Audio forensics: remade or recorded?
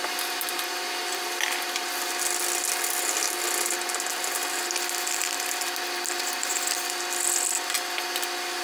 recorded